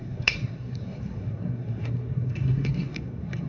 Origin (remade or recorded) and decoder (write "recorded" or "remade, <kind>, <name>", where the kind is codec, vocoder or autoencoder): remade, codec, SNAC